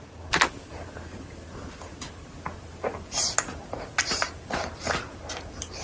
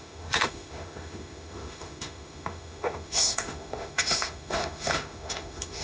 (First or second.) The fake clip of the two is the second